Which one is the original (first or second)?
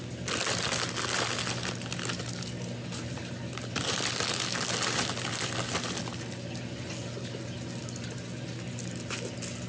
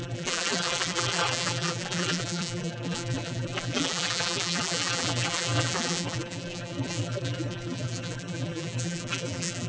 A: first